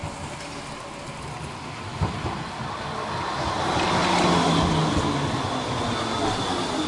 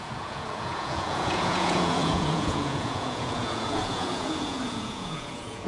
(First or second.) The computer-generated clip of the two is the second